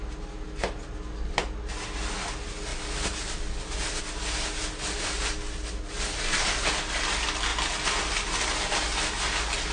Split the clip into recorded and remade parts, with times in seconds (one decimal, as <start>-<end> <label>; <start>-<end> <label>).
0.0-9.7 recorded